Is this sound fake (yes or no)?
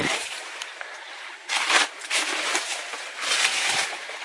yes